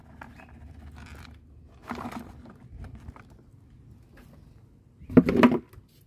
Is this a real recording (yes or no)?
yes